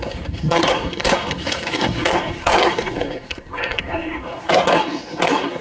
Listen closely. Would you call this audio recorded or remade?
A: remade